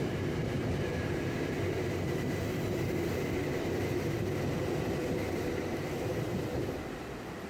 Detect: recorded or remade recorded